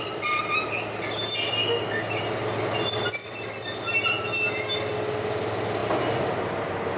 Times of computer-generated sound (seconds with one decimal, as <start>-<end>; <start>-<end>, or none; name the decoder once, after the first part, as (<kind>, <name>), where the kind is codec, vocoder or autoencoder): 1.6-2.2 (codec, DAC)